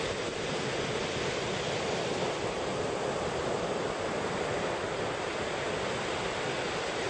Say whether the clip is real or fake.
real